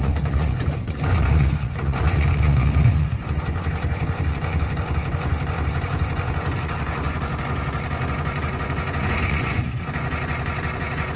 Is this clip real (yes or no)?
no